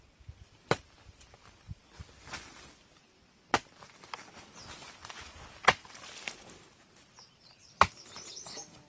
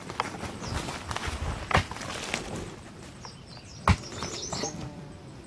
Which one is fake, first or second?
first